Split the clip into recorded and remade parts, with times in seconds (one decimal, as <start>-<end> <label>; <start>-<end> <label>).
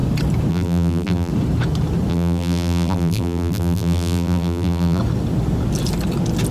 0.0-0.5 recorded; 0.5-1.3 remade; 1.3-2.1 recorded; 2.1-5.0 remade; 5.0-6.5 recorded